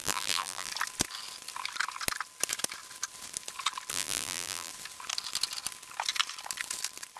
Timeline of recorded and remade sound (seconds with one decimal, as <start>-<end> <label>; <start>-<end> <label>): 0.0-0.7 remade; 0.7-3.9 recorded; 3.9-4.7 remade; 4.7-7.2 recorded

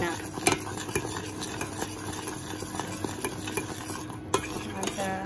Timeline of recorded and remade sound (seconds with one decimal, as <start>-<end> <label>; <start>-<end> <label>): 0.0-5.3 recorded

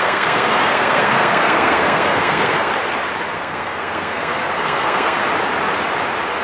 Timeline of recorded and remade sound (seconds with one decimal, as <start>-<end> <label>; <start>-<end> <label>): 0.0-2.7 remade; 2.7-3.3 recorded; 3.3-5.2 remade; 5.2-6.4 recorded

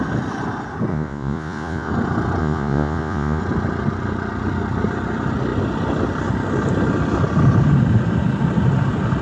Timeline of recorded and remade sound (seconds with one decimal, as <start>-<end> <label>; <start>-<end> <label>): 0.0-0.9 recorded; 0.9-1.9 remade; 1.9-2.4 recorded; 2.4-3.4 remade; 3.4-9.2 recorded

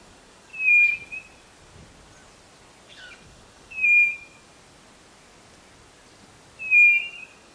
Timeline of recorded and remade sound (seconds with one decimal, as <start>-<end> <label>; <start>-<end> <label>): 0.0-0.5 remade; 0.5-2.9 recorded; 2.9-4.5 remade; 4.5-7.1 recorded; 7.1-7.5 remade

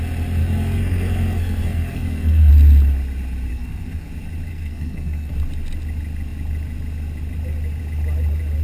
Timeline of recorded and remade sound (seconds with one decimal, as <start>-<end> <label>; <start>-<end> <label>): 0.0-0.4 recorded; 0.4-2.5 remade; 2.5-3.5 recorded; 3.5-4.1 remade; 4.1-4.5 recorded; 4.5-5.3 remade; 5.3-8.6 recorded

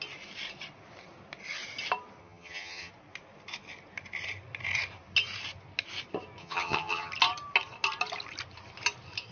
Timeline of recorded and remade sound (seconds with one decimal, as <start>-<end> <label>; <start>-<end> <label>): 0.0-2.2 recorded; 2.2-2.9 remade; 2.9-6.4 recorded; 6.4-7.1 remade; 7.1-9.3 recorded

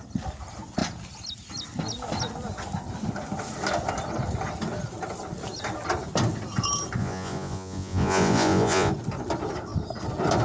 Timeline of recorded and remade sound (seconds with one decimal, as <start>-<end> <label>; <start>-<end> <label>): 0.0-7.0 recorded; 7.0-8.9 remade; 8.9-10.4 recorded